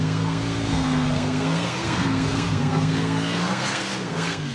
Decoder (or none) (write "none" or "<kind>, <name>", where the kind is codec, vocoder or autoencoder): codec, SNAC